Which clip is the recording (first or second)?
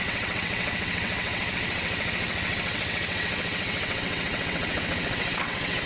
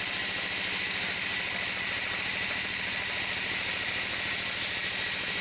second